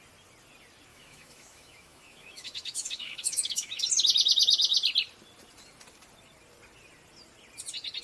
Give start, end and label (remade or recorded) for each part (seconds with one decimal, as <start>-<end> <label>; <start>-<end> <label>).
0.0-0.9 recorded; 0.9-3.8 remade; 3.8-8.0 recorded